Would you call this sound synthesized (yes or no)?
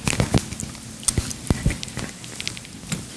no